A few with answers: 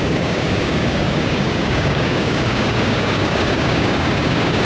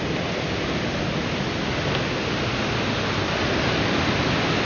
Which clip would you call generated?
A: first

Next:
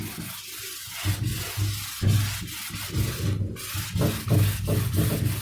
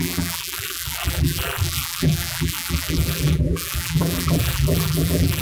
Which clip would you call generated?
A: second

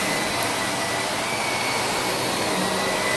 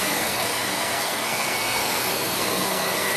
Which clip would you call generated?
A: second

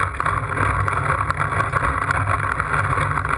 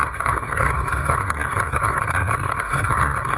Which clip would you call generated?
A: second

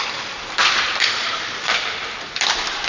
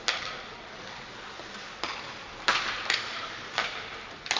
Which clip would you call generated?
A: first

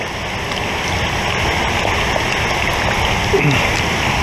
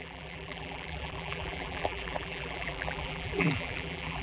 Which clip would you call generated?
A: second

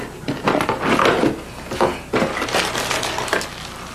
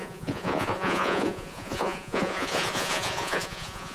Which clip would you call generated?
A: second